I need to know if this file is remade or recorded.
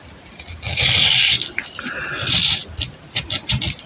recorded